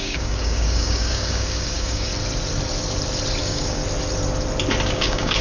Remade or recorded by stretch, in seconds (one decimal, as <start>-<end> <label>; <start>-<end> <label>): 0.0-2.1 remade; 2.1-3.4 recorded; 3.4-3.8 remade; 3.8-4.9 recorded; 4.9-5.4 remade